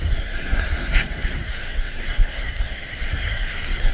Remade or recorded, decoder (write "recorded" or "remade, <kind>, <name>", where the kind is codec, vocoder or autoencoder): remade, codec, SNAC